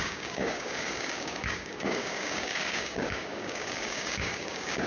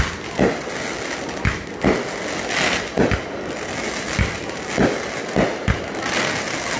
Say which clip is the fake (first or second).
first